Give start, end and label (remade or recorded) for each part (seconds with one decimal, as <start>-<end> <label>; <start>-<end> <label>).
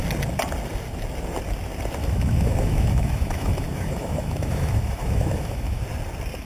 0.0-2.0 recorded; 2.0-5.8 remade; 5.8-6.4 recorded